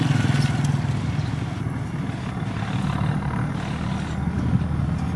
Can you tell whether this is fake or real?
real